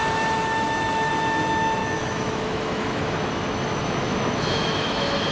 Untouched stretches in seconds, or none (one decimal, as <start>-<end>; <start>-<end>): 1.1-1.8